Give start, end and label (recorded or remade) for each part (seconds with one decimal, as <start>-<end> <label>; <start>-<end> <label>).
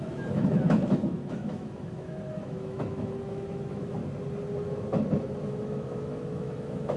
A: 0.0-4.0 remade; 4.0-5.4 recorded; 5.4-7.0 remade